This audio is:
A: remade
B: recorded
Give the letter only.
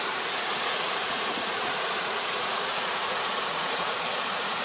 A